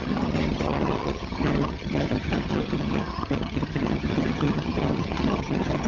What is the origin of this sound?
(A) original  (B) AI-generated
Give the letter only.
B